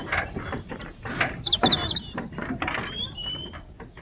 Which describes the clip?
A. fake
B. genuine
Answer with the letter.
B